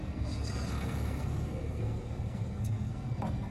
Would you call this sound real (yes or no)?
no